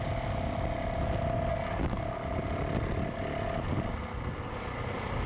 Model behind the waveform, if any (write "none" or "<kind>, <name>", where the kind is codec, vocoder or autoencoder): none